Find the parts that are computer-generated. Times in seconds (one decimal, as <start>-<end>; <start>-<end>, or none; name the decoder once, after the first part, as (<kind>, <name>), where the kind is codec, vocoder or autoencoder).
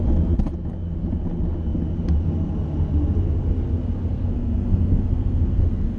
4.1-6.0 (codec, SNAC)